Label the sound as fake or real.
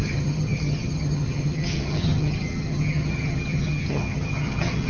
fake